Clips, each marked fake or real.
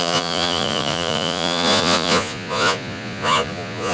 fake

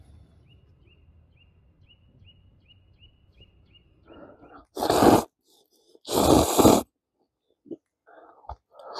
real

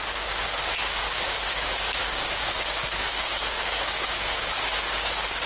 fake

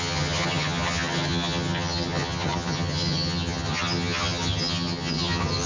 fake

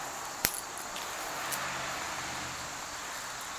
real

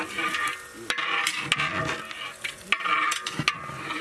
real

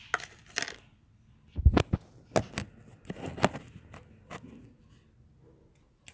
real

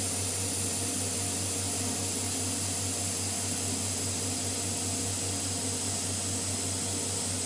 real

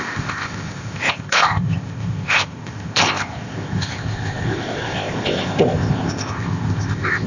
fake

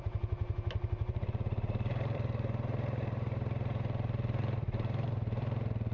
fake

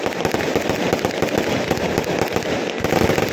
real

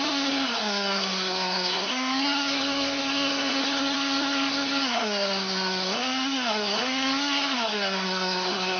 fake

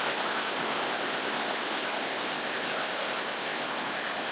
fake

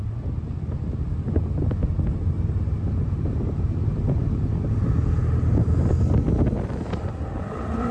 real